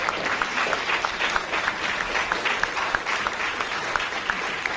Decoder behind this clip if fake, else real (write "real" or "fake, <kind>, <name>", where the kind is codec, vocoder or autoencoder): fake, vocoder, BigVGAN v2